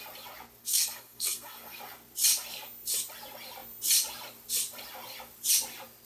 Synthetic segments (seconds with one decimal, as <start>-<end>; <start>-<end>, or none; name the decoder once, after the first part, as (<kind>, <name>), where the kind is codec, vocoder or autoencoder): 0.6-1.8 (codec, SNAC)